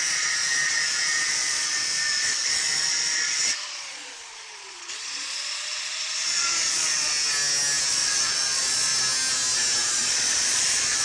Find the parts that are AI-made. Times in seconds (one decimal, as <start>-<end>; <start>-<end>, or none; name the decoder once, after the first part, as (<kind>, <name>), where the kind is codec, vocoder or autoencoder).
0.0-7.1 (vocoder, Vocos); 7.9-8.9; 9.9-11.0

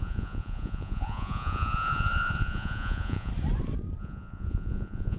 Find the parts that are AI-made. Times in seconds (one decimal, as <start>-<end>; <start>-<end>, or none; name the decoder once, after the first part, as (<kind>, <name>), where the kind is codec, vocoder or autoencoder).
0.0-3.3 (vocoder, Vocos); 4.0-5.2

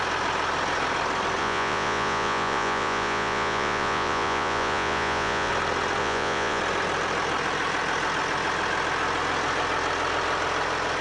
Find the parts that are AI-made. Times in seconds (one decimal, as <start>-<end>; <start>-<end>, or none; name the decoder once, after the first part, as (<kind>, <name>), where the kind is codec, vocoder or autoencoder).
1.4-5.5 (vocoder, Vocos); 6.0-6.6

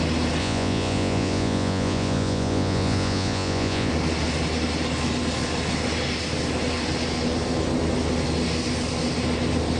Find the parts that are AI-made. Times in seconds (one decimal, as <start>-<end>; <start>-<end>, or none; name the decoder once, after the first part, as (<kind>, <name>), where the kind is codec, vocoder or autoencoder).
0.4-3.9 (vocoder, Vocos)

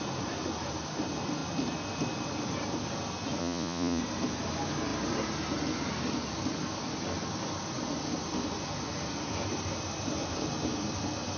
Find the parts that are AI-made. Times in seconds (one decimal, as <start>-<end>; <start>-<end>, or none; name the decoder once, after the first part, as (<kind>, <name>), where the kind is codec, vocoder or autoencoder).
3.4-4.0 (vocoder, Vocos)